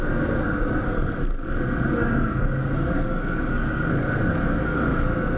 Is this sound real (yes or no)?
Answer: no